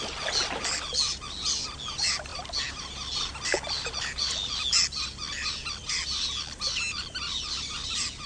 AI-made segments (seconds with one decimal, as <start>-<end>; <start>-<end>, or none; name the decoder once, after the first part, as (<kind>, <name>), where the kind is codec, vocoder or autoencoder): none